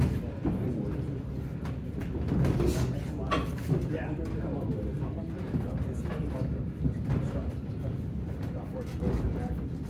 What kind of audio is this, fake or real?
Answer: real